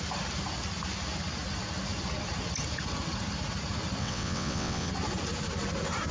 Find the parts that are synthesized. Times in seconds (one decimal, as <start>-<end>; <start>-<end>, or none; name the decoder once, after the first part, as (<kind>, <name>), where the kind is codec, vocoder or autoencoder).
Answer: 4.0-4.9 (vocoder, WaveNeXt)